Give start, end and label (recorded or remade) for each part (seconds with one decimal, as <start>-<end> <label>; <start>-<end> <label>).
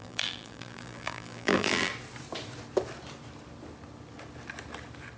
0.0-1.9 remade; 1.9-5.2 recorded